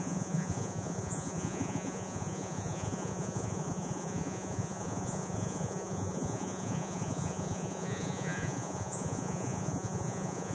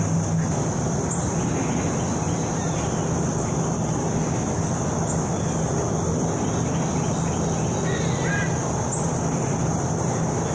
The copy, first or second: first